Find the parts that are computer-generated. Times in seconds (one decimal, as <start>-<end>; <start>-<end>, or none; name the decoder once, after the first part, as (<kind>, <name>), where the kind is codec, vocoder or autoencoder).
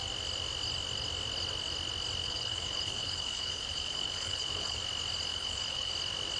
2.2-4.8 (codec, HILCodec); 5.3-5.9